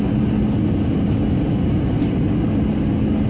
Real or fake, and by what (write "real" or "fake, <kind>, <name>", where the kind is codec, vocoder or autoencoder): real